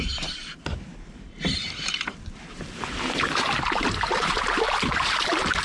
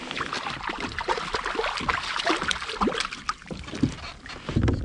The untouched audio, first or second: second